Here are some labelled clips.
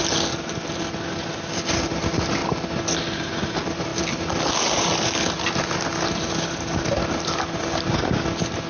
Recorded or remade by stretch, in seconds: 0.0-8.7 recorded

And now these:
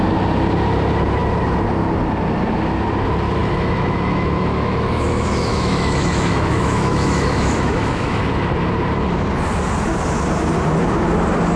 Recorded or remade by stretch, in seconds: 0.0-3.4 recorded; 3.4-8.2 remade; 8.2-11.6 recorded

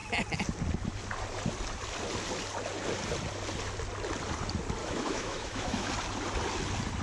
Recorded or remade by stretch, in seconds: 0.0-4.8 recorded; 4.8-5.9 remade; 5.9-7.0 recorded

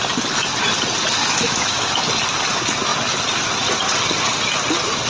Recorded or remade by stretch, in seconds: 0.0-1.2 recorded; 1.2-1.9 remade; 1.9-5.1 recorded

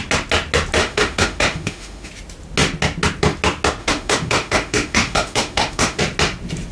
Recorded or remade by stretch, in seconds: 0.0-0.8 recorded; 0.8-2.1 remade; 2.1-3.8 recorded; 3.8-6.0 remade; 6.0-6.7 recorded